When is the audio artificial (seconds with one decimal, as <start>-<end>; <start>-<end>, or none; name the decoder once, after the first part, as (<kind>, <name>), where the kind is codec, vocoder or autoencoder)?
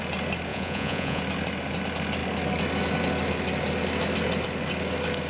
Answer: 0.5-1.2 (vocoder, Vocos)